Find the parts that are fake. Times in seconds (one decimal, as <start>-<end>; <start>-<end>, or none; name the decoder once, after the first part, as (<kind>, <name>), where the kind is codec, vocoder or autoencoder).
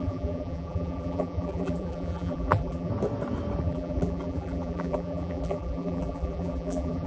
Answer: 0.0-2.9 (vocoder, BigVGAN v2); 3.6-7.1